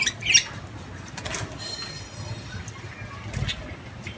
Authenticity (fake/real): real